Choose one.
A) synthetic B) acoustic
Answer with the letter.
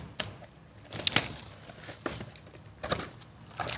B